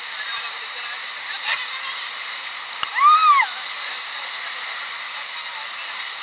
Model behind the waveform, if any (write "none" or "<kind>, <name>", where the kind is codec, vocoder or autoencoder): none